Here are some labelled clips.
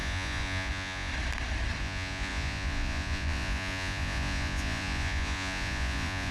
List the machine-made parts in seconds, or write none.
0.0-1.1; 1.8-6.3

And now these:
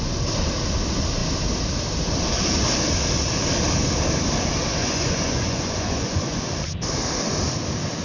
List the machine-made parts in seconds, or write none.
4.8-6.4

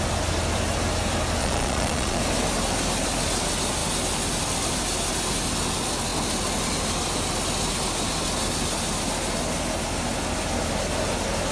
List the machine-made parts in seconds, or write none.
1.4-2.2

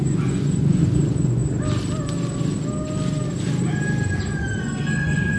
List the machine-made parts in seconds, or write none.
0.0-1.4; 4.6-5.4

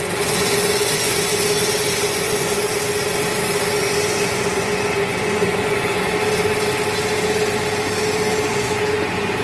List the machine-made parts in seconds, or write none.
0.0-1.3; 1.9-2.6; 3.8-6.1; 8.5-9.4

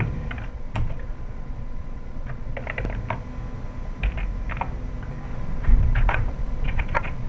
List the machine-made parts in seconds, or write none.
0.5-2.6; 5.3-7.3